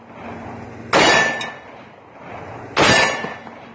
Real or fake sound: real